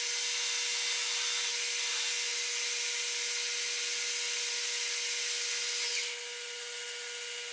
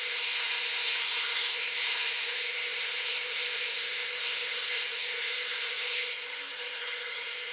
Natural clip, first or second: first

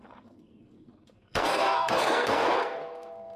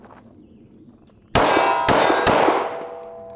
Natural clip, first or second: second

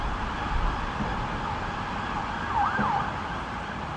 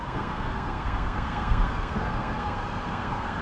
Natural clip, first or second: first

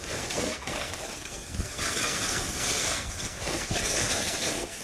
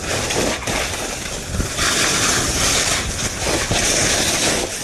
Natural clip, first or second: second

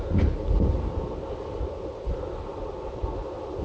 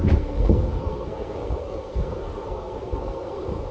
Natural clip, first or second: first